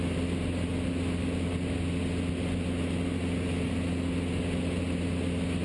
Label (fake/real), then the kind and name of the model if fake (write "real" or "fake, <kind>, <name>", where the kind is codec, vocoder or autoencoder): real